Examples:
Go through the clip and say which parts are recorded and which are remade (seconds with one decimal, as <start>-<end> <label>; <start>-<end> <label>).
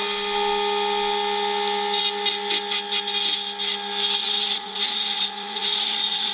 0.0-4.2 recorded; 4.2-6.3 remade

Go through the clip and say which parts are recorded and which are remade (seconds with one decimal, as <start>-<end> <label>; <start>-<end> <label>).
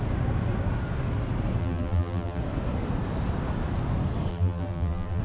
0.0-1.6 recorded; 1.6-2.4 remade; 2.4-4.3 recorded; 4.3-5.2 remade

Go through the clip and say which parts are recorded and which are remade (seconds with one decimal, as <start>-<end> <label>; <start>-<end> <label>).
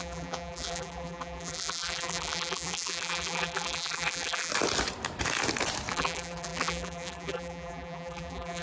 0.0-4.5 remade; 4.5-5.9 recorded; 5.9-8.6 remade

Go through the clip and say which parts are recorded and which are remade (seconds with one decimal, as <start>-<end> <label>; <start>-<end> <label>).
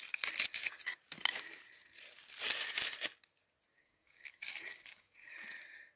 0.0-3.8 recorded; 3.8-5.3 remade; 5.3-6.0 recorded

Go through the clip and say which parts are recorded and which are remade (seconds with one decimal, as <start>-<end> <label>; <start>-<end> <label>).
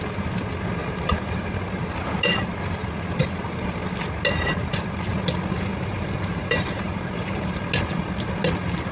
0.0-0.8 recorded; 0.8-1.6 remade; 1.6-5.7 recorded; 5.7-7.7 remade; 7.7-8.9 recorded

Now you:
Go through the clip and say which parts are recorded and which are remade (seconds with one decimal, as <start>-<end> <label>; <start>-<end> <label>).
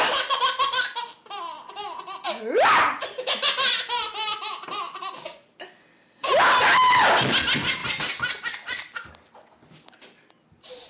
0.0-7.8 recorded; 7.8-9.1 remade; 9.1-10.9 recorded